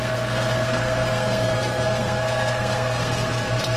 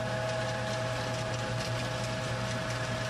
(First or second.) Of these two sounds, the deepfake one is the first